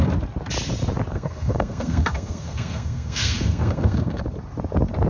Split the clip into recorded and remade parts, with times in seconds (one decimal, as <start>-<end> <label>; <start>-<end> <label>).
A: 0.0-1.1 recorded; 1.1-4.2 remade; 4.2-5.1 recorded